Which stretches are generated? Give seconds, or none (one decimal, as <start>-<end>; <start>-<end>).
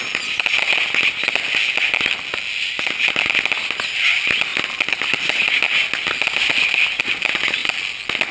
none